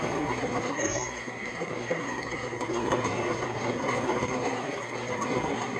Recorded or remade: remade